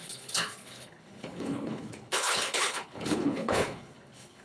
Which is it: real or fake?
fake